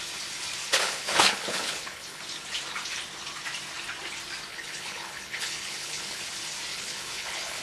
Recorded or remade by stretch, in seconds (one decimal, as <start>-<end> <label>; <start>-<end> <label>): 0.0-0.7 recorded; 0.7-2.2 remade; 2.2-4.5 recorded; 4.5-6.2 remade; 6.2-6.7 recorded; 6.7-7.6 remade